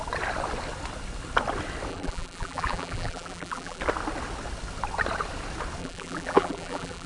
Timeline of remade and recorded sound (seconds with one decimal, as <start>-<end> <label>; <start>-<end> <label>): 0.0-1.9 recorded; 1.9-3.8 remade; 3.8-5.8 recorded; 5.8-7.1 remade